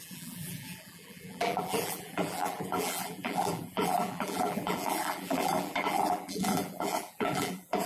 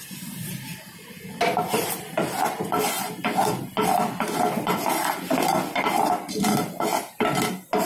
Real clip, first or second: second